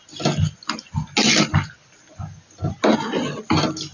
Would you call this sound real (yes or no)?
yes